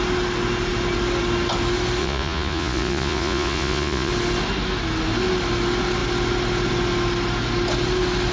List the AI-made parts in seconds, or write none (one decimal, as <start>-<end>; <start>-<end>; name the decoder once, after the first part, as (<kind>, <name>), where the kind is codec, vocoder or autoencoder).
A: 2.0-4.1 (vocoder, Vocos)